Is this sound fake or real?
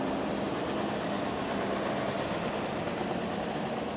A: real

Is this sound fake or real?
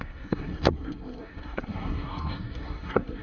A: fake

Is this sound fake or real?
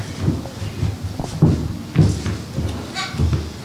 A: real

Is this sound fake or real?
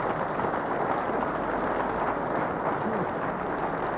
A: real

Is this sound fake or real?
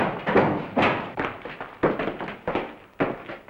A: real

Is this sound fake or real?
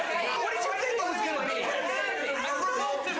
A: real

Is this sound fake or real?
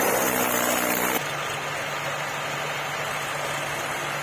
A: real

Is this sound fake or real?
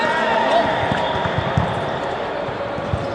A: real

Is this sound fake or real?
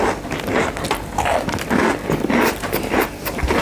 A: real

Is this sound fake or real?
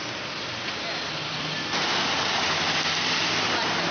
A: real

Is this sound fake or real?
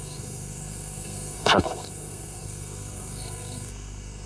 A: fake